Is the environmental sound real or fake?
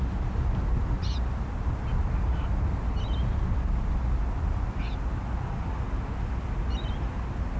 real